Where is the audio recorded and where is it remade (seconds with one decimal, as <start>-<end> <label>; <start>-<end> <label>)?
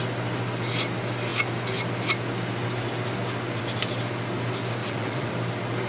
0.0-4.8 recorded; 4.8-5.3 remade; 5.3-5.9 recorded